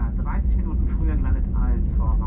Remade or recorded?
recorded